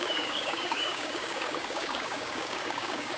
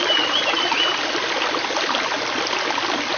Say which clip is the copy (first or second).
first